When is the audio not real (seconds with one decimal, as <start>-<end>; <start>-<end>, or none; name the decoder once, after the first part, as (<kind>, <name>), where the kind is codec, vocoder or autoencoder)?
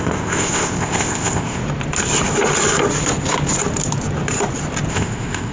0.0-1.6 (codec, ZipCodec); 4.9-5.5